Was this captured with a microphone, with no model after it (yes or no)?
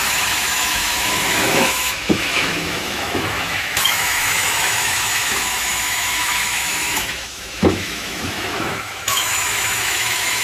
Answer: no